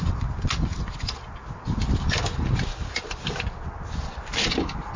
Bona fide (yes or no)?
yes